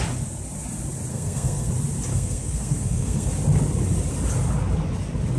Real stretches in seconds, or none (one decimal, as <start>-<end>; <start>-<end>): 0.0-1.1; 1.7-2.1; 3.3-5.4